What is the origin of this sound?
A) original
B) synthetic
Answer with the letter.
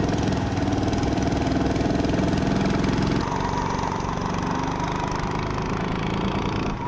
A